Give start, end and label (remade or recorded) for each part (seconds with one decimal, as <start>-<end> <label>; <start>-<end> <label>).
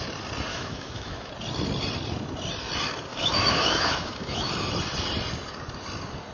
0.0-0.5 recorded; 0.5-1.3 remade; 1.3-3.1 recorded; 3.1-4.5 remade; 4.5-6.3 recorded